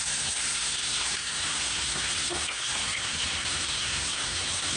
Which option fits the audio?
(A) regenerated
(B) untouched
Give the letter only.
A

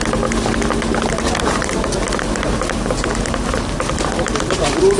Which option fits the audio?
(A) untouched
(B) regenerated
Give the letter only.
A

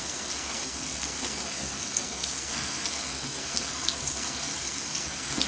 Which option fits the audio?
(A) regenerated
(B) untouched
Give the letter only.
A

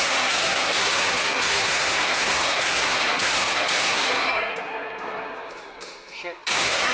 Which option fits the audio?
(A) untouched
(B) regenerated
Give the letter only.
B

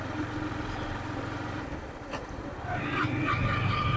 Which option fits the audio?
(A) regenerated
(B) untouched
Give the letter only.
B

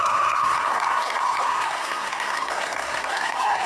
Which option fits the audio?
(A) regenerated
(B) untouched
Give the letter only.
A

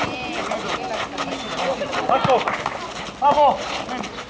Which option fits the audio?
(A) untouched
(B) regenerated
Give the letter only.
A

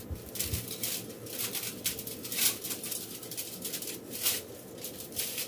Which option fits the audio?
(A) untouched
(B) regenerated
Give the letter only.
A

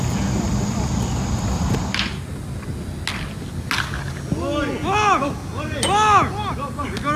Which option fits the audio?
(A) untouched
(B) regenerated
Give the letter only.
A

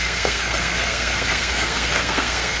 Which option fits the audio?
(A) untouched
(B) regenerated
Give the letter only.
B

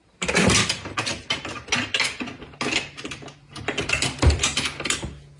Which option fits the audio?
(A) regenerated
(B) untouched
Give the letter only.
B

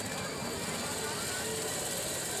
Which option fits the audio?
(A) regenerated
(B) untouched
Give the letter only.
B